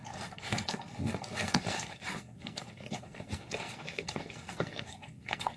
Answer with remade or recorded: remade